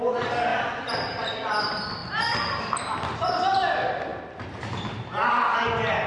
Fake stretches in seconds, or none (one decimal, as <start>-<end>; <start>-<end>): none

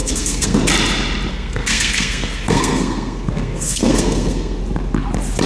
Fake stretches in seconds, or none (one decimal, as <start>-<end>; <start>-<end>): 0.0-0.6; 1.3-4.6

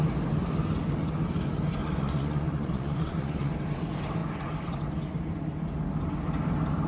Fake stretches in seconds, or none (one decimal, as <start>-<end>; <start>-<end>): 1.8-3.5

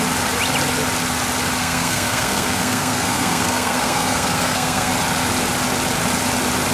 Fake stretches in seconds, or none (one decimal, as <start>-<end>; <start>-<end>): 1.6-4.9